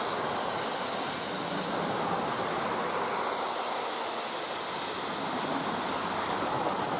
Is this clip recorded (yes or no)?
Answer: yes